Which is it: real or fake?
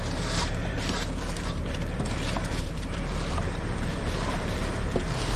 fake